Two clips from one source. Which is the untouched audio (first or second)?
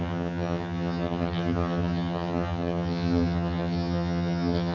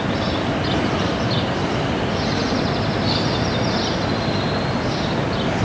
second